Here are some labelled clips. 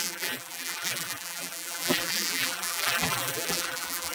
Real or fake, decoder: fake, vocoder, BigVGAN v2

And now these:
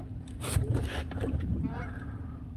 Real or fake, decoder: fake, vocoder, BigVGAN v2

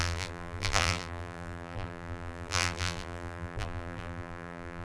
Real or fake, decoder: fake, vocoder, BigVGAN v2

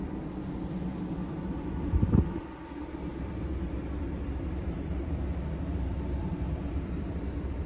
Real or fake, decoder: fake, vocoder, BigVGAN v2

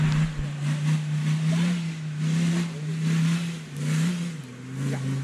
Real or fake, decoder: real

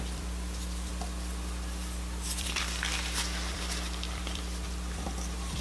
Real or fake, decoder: fake, vocoder, BigVGAN v2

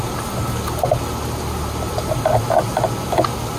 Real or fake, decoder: real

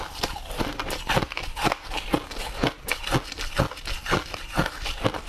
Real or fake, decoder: real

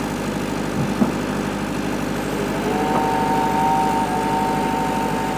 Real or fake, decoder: real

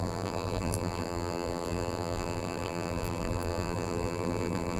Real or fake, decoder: fake, vocoder, BigVGAN v2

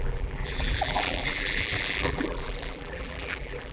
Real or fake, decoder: fake, vocoder, BigVGAN v2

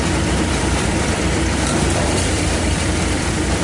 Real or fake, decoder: fake, vocoder, BigVGAN v2